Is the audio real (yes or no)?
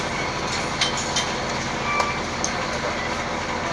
yes